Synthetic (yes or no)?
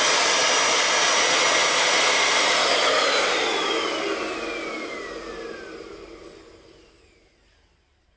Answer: no